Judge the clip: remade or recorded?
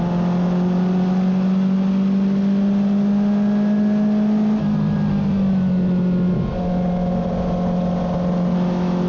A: recorded